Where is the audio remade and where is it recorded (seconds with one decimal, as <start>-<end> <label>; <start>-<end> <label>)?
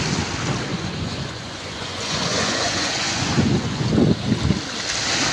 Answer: 0.0-0.7 recorded; 0.7-3.9 remade; 3.9-5.3 recorded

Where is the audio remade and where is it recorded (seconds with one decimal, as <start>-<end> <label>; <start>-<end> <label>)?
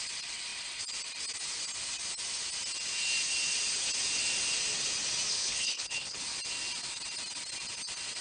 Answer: 0.0-5.3 recorded; 5.3-6.2 remade; 6.2-8.2 recorded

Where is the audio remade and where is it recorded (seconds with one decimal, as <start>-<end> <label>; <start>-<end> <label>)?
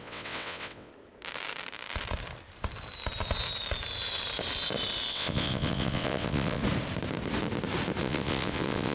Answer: 0.0-0.9 remade; 0.9-5.1 recorded; 5.1-6.6 remade; 6.6-8.0 recorded; 8.0-8.9 remade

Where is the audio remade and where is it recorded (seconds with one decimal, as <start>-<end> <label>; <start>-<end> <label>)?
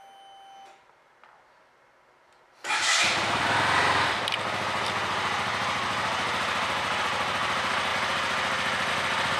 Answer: 0.0-9.4 recorded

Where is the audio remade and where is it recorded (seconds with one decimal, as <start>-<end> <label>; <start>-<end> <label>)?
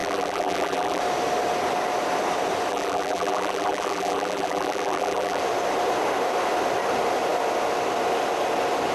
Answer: 0.0-1.0 remade; 1.0-2.7 recorded; 2.7-5.4 remade; 5.4-8.9 recorded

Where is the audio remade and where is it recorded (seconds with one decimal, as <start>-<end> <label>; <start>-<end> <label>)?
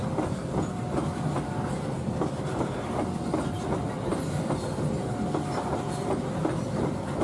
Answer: 0.0-7.2 recorded